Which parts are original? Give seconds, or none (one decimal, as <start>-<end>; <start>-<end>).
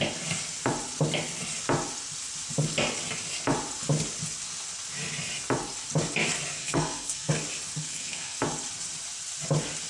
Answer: 0.0-6.6; 7.3-7.8; 8.4-9.9